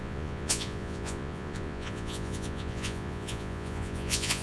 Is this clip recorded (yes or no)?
no